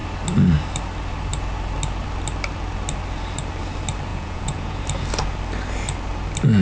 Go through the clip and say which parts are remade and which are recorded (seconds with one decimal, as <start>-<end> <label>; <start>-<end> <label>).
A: 0.0-4.1 recorded; 4.1-4.8 remade; 4.8-6.6 recorded